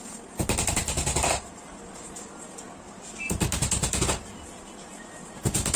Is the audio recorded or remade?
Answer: recorded